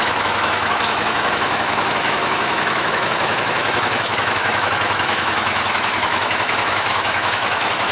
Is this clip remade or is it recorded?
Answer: remade